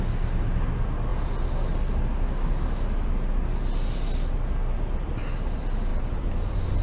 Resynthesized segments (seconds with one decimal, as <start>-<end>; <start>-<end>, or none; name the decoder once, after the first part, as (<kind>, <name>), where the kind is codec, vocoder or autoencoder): 5.9-6.8 (vocoder, BigVGAN v2)